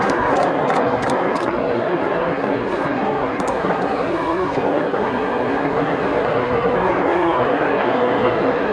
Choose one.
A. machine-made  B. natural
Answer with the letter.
A